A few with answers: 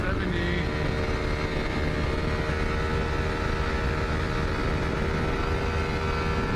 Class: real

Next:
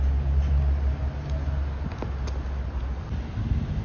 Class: real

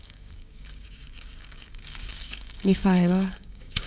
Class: fake